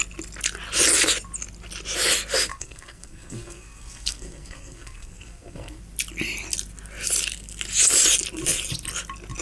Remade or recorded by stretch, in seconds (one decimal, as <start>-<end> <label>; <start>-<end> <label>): 0.0-2.5 recorded; 2.5-5.8 remade; 5.8-9.4 recorded